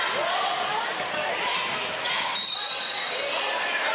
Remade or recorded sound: recorded